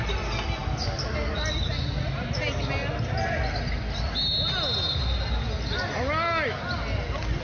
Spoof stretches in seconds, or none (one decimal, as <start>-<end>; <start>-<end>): none